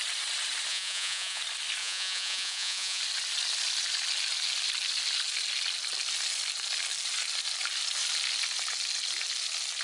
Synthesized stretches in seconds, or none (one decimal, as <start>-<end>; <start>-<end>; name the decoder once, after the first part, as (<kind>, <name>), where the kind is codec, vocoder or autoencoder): 0.7-1.4 (vocoder, Vocos); 1.8-3.0

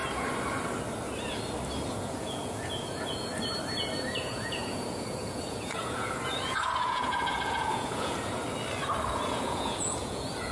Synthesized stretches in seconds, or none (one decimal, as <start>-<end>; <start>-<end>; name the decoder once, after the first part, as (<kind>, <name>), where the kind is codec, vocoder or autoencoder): 2.0-3.3 (vocoder, Vocos); 4.2-8.4; 9.1-10.5